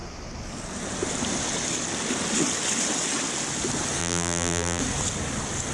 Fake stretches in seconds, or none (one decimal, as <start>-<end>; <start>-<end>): 4.0-4.8